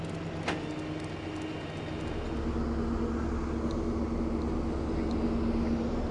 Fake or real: real